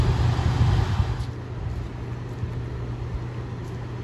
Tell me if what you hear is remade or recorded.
recorded